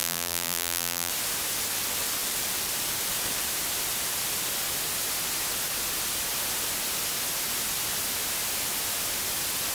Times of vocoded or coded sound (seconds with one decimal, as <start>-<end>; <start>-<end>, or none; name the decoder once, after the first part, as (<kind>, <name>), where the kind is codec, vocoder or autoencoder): 0.0-1.1 (vocoder, BigVGAN v2)